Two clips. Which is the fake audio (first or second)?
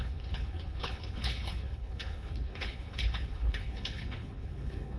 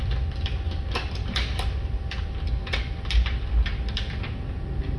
first